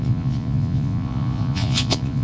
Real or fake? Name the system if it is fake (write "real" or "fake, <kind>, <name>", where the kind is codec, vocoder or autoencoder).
fake, vocoder, Vocos